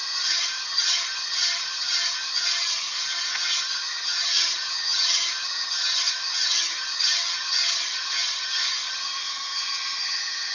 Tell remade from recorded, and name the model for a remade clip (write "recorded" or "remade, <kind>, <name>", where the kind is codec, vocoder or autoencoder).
remade, vocoder, HiFi-GAN